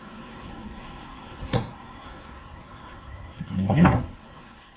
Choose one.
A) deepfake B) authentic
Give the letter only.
A